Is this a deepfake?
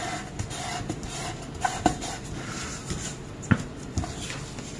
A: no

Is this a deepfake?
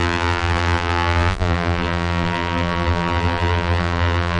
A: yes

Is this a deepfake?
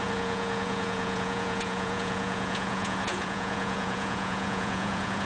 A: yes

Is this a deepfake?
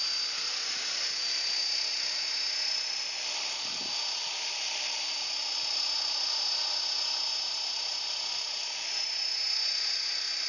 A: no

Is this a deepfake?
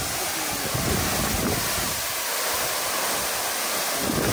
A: no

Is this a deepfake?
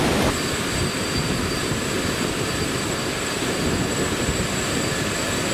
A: no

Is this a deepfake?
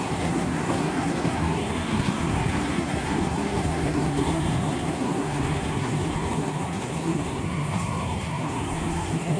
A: yes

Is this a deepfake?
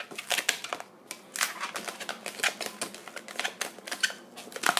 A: no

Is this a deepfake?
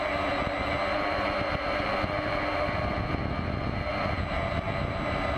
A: no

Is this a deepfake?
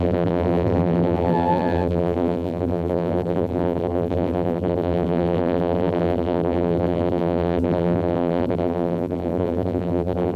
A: yes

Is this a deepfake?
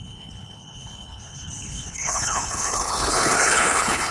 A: yes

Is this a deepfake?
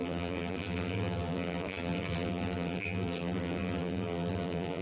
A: yes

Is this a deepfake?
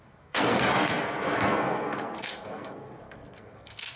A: yes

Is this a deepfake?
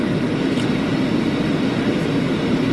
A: yes